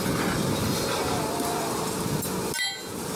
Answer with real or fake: real